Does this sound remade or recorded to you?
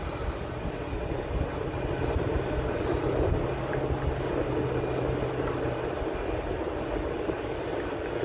recorded